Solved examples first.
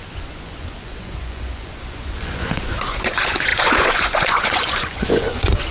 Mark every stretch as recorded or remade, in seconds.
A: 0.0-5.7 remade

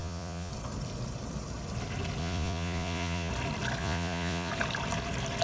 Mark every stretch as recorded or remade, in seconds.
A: 0.0-0.5 remade; 0.5-2.2 recorded; 2.2-3.3 remade; 3.3-3.8 recorded; 3.8-4.5 remade; 4.5-5.4 recorded